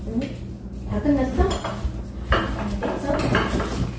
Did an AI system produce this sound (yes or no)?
no